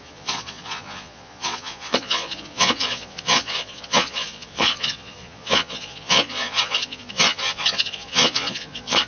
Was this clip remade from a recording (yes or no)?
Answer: yes